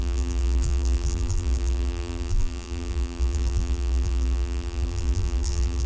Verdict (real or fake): fake